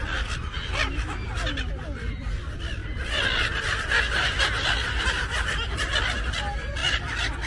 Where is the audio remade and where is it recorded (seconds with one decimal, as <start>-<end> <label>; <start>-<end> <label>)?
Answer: 0.0-7.5 recorded